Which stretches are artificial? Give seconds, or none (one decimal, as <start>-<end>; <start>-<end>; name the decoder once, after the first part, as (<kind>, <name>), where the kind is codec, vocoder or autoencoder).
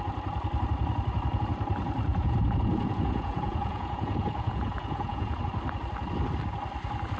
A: 2.1-5.4 (vocoder, Vocos)